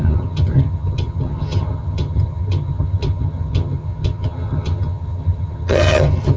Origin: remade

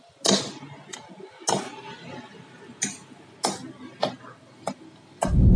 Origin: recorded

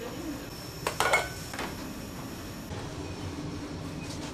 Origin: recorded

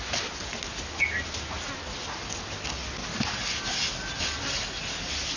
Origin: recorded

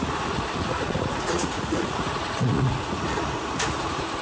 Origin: remade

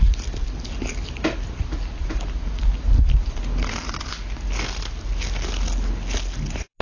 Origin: recorded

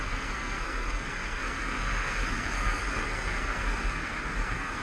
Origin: remade